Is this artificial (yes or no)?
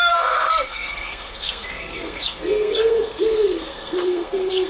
yes